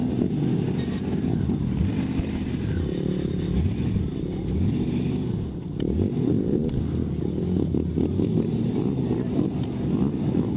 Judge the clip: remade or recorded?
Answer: recorded